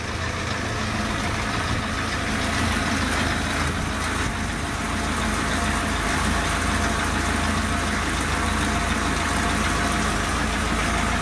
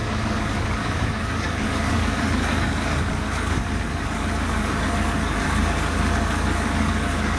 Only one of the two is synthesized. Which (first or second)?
second